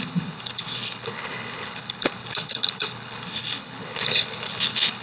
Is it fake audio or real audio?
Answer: fake